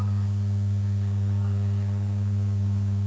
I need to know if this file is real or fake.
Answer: fake